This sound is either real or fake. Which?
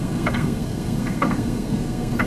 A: fake